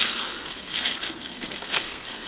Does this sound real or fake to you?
fake